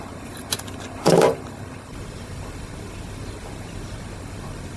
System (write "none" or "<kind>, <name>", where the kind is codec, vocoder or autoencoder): none